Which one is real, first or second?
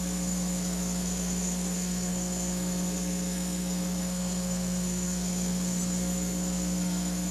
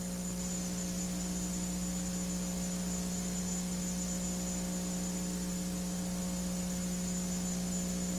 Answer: second